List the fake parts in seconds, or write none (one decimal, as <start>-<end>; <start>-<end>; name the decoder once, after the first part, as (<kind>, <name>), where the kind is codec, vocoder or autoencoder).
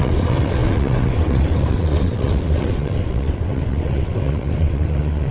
0.0-5.3 (vocoder, WaveNeXt)